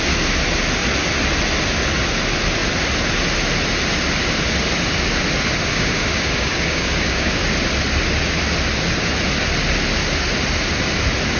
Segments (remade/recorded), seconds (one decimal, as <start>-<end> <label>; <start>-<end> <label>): 0.0-5.7 recorded; 5.7-7.4 remade; 7.4-11.4 recorded